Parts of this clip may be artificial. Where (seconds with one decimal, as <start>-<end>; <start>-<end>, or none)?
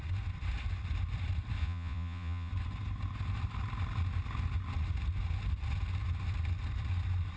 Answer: 1.6-2.5